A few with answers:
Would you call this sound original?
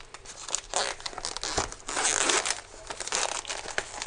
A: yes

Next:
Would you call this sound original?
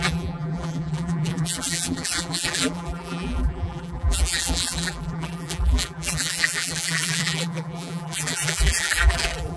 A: no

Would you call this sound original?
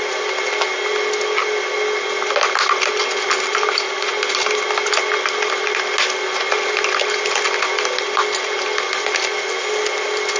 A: yes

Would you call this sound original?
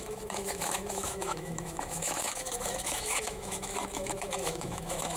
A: no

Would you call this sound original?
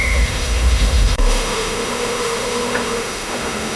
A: no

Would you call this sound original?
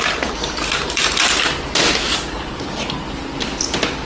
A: yes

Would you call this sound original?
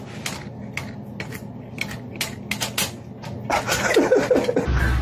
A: yes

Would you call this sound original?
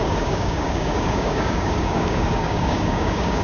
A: no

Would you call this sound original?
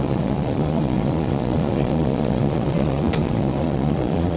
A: no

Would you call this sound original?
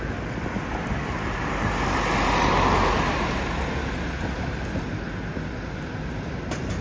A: yes